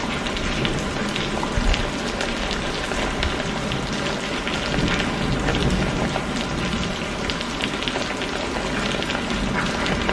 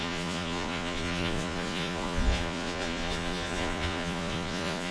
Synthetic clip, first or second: second